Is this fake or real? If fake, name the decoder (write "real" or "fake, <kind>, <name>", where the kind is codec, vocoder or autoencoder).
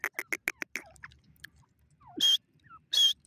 real